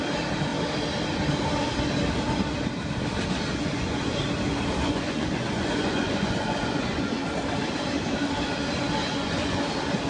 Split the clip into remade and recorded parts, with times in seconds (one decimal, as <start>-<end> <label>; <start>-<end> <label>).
0.0-3.5 recorded; 3.5-4.2 remade; 4.2-4.8 recorded; 4.8-7.2 remade; 7.2-9.0 recorded; 9.0-9.6 remade; 9.6-10.1 recorded